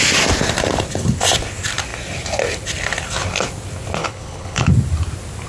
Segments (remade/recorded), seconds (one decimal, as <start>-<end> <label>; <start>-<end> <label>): 0.0-4.0 recorded; 4.0-4.7 remade; 4.7-5.5 recorded